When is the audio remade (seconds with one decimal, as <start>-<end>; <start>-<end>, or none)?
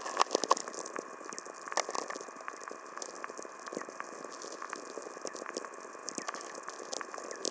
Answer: none